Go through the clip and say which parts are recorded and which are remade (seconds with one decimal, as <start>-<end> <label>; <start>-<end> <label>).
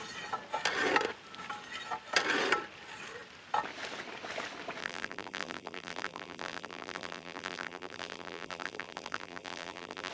0.0-4.8 recorded; 4.8-10.1 remade